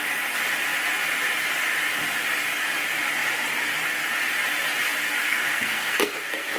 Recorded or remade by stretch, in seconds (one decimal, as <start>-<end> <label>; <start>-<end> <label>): 0.0-5.2 recorded; 5.2-6.6 remade